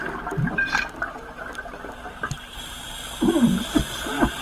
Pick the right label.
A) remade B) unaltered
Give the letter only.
B